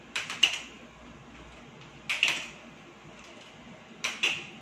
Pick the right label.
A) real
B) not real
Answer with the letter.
A